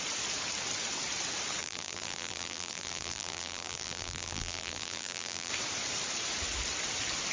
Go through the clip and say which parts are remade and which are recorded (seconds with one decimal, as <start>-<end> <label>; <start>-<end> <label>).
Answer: 0.0-1.6 recorded; 1.6-5.5 remade; 5.5-7.3 recorded